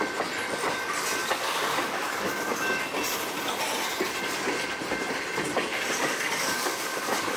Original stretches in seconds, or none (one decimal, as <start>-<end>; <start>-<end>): 0.0-1.2; 2.8-6.0